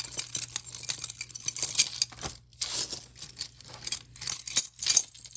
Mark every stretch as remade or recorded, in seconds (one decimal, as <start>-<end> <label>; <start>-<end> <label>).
0.0-5.4 recorded